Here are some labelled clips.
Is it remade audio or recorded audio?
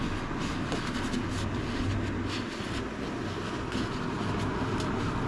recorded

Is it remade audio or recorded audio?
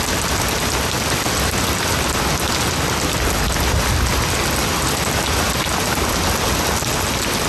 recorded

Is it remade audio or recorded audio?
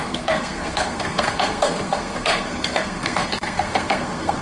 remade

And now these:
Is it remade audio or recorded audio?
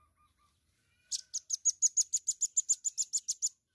recorded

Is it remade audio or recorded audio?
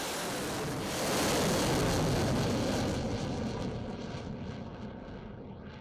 recorded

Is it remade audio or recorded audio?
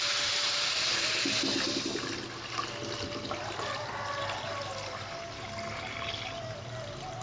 recorded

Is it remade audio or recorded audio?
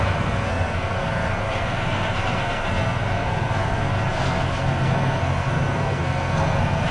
remade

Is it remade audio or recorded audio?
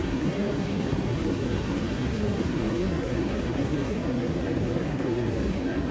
remade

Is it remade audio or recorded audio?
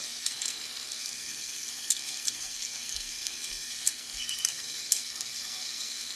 remade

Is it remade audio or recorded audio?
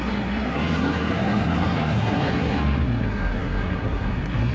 remade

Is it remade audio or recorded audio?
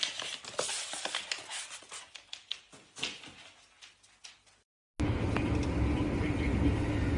recorded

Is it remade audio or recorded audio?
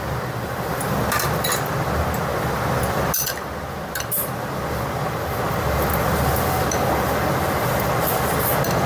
recorded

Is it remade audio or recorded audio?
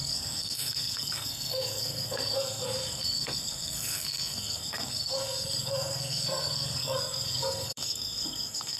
remade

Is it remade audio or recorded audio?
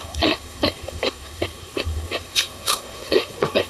remade